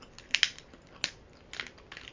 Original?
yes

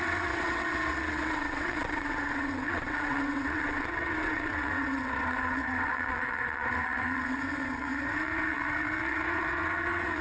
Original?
no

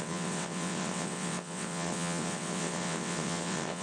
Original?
no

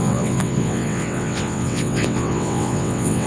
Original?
no